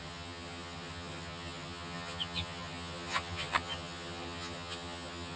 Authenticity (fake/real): fake